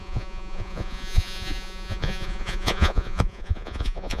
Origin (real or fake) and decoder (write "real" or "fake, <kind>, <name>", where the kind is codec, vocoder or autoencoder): fake, vocoder, Vocos